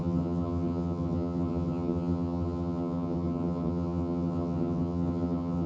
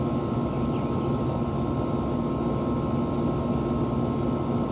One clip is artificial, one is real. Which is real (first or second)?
second